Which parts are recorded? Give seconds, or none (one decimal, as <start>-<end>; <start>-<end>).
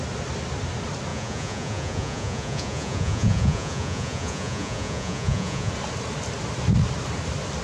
0.0-1.1; 5.7-7.6